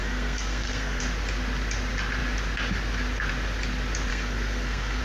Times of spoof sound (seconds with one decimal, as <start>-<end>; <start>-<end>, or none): 0.0-1.0; 4.1-5.0